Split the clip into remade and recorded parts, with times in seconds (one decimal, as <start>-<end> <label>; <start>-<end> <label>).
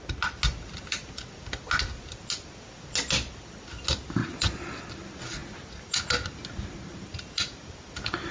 0.0-4.2 recorded; 4.2-4.9 remade; 4.9-8.3 recorded